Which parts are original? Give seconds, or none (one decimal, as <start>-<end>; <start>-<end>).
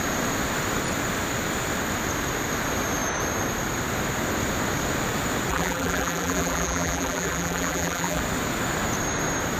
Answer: 0.0-5.5; 8.2-9.6